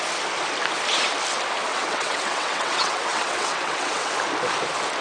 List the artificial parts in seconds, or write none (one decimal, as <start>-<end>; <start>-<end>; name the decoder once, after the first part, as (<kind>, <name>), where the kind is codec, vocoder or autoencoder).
1.7-4.1 (vocoder, WaveNeXt)